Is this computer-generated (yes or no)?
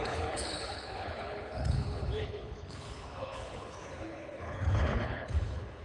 yes